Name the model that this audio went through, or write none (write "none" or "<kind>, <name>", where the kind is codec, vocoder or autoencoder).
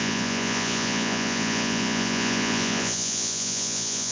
vocoder, Vocos